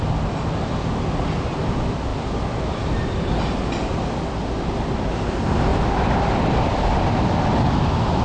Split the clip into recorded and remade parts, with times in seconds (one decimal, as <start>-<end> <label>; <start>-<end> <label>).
0.0-2.1 recorded; 2.1-3.4 remade; 3.4-5.7 recorded; 5.7-7.7 remade; 7.7-8.2 recorded